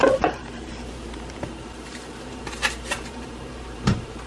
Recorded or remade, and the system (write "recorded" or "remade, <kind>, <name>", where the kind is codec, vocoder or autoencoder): remade, vocoder, BigVGAN v2